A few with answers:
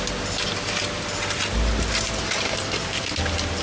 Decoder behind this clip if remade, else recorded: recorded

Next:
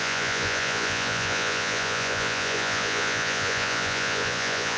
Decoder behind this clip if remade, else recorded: remade, vocoder, Vocos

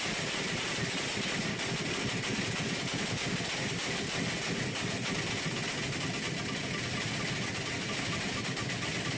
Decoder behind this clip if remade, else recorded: recorded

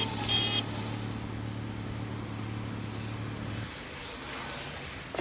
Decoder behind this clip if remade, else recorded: recorded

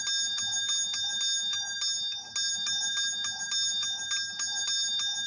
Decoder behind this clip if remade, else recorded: recorded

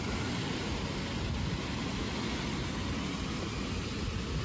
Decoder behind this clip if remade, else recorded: recorded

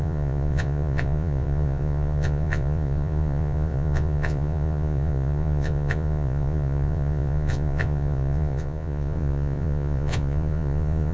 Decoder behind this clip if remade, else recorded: remade, vocoder, Vocos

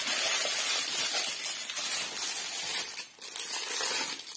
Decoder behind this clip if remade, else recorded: recorded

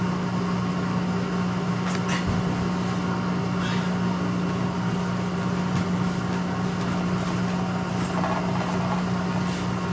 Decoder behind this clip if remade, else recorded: recorded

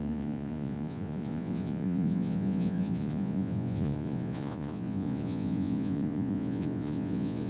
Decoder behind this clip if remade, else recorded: remade, vocoder, Vocos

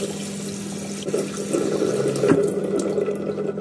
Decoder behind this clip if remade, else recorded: recorded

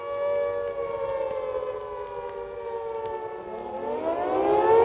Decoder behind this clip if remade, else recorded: recorded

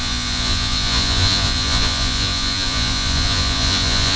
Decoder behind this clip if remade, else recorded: remade, vocoder, Vocos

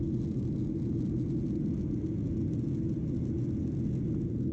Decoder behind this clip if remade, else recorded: recorded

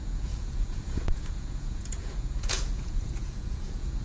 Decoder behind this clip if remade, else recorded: remade, vocoder, Vocos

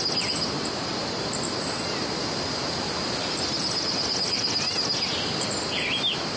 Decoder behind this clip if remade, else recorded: recorded